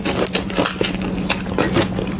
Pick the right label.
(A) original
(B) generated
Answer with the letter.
A